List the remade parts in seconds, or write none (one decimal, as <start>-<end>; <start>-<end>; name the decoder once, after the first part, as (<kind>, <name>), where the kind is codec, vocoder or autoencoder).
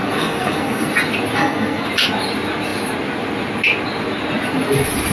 0.0-0.9 (codec, SNAC); 1.4-1.9